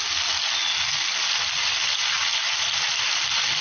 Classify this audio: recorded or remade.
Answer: recorded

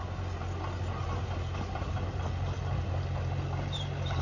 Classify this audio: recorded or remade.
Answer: recorded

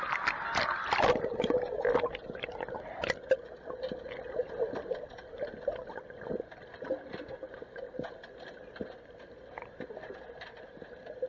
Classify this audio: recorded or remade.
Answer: recorded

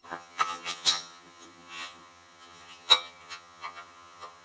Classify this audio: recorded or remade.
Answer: remade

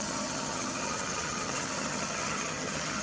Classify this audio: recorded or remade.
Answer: remade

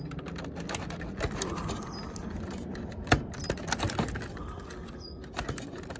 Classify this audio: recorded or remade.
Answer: recorded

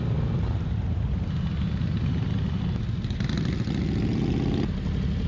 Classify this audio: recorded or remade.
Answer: recorded